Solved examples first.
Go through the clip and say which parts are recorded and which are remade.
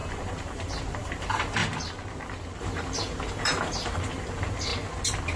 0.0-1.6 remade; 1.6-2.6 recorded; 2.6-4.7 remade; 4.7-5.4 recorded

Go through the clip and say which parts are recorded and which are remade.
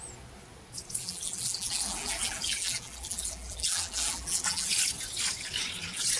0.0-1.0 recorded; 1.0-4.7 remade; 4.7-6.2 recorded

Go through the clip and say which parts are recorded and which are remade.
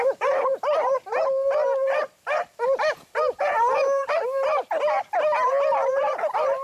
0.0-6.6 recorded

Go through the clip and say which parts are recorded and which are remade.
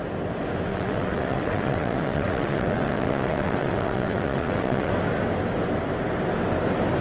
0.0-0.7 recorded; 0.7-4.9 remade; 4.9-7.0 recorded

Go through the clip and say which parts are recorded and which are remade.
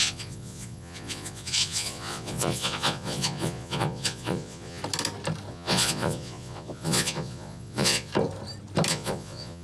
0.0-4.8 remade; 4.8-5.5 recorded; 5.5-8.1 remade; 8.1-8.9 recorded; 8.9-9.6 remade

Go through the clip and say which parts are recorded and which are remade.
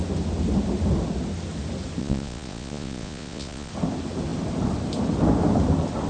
0.0-2.0 recorded; 2.0-3.7 remade; 3.7-6.1 recorded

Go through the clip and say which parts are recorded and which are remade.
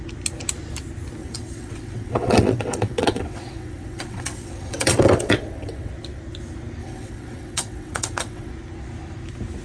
0.0-1.2 recorded; 1.2-5.9 remade; 5.9-6.8 recorded; 6.8-8.5 remade; 8.5-9.6 recorded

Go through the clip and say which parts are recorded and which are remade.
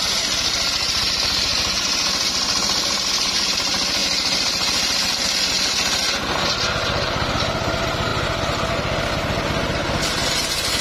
0.0-10.8 recorded